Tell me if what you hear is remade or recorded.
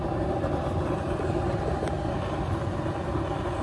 recorded